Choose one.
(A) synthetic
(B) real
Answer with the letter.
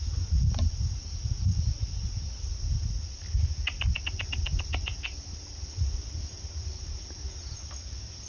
B